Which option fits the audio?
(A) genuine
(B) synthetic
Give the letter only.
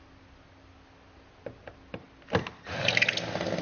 A